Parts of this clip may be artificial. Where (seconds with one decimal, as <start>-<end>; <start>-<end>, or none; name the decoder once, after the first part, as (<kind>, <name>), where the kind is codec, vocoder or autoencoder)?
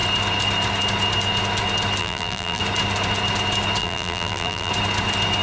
2.0-2.6 (vocoder, BigVGAN v2); 3.8-4.7